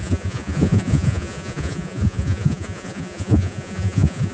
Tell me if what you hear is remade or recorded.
remade